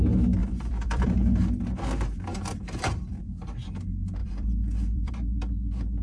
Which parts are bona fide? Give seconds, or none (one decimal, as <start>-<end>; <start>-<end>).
0.0-0.4; 1.1-2.3; 3.2-4.2; 5.1-6.0